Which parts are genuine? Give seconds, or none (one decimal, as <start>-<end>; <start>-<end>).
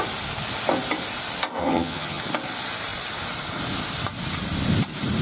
0.0-1.6; 2.2-5.2